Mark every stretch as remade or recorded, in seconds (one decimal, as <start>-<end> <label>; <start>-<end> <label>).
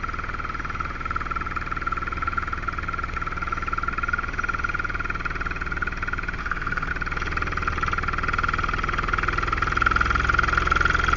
0.0-6.4 recorded; 6.4-6.9 remade; 6.9-11.2 recorded